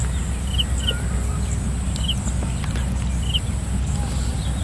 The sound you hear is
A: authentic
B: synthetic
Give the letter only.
A